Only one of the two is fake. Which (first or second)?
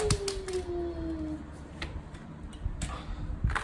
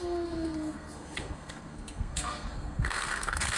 second